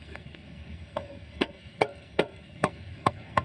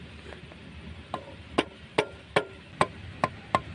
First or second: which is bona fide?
second